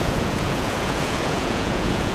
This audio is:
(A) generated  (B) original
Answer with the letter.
A